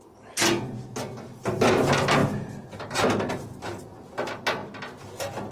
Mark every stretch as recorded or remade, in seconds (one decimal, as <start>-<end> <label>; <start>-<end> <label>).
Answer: 0.0-5.5 recorded